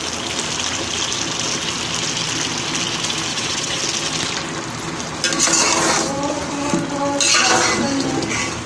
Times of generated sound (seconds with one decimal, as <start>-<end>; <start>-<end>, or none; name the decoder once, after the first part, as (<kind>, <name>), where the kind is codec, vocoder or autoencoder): 3.3-3.8 (vocoder, WaveNeXt)